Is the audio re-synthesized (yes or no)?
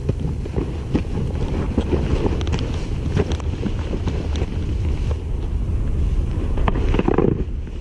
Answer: no